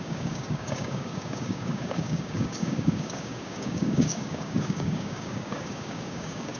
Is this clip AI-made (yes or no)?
yes